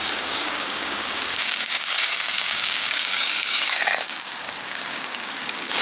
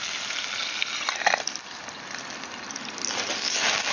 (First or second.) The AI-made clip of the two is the first